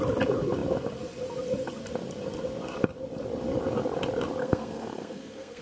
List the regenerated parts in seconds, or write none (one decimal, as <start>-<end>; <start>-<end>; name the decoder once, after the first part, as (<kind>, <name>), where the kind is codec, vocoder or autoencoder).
4.4-5.6 (codec, SNAC)